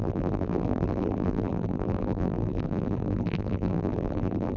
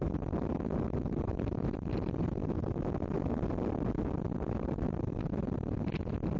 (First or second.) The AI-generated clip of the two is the first